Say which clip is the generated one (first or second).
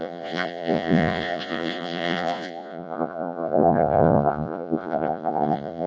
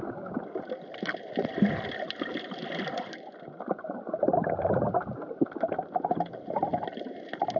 first